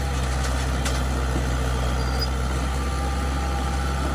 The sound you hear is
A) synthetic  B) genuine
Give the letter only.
B